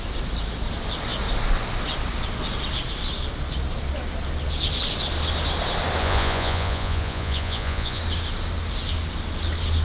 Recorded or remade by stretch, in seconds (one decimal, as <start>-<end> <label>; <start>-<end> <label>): 0.0-6.0 recorded; 6.0-8.0 remade; 8.0-9.8 recorded